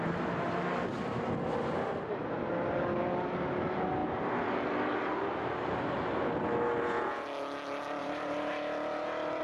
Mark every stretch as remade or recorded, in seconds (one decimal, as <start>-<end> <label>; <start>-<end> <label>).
0.0-8.0 recorded; 8.0-8.5 remade; 8.5-9.4 recorded